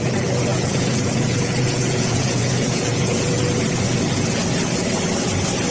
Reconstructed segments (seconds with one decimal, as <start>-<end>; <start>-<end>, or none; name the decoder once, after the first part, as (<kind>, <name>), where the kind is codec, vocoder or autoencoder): 0.5-3.4 (vocoder, Vocos)